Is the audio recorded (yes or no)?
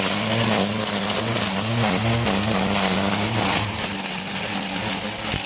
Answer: yes